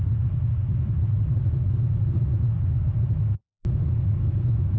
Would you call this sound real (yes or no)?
yes